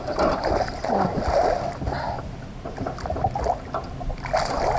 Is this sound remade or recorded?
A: recorded